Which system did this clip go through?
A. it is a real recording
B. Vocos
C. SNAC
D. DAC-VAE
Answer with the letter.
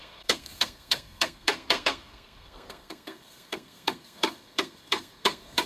C